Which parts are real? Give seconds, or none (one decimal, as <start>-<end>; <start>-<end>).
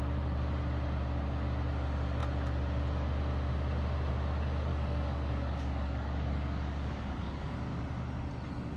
0.0-4.7; 7.8-8.8